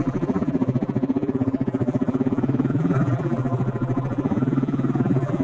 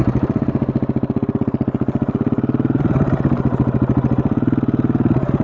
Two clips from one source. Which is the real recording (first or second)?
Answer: second